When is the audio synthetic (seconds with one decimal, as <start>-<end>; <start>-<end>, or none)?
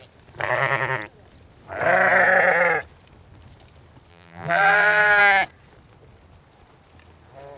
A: 4.1-5.2